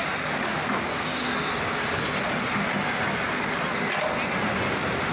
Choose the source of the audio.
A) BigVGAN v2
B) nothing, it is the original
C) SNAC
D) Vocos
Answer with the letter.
B